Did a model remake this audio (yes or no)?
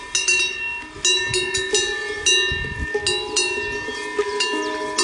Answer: no